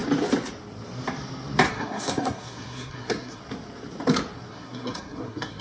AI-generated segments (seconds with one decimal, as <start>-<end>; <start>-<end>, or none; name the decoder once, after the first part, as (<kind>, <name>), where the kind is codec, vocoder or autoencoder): 1.7-3.4 (codec, SNAC); 4.5-5.6